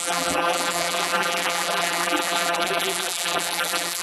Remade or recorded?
remade